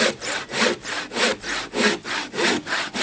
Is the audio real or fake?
real